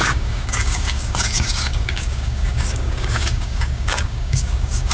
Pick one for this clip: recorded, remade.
remade